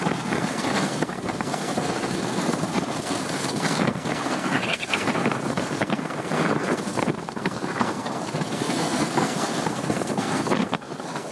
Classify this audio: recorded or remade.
remade